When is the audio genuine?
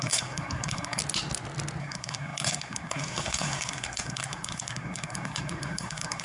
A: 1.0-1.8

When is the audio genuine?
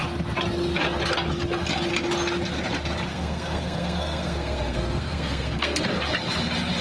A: 0.0-3.1; 5.8-6.8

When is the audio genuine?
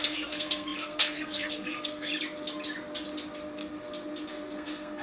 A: 2.1-4.3